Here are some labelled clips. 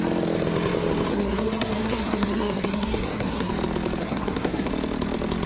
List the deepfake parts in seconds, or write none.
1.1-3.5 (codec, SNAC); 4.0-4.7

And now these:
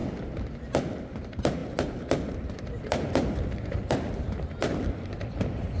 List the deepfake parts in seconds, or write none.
1.0-1.6 (vocoder, BigVGAN v2); 2.3-5.8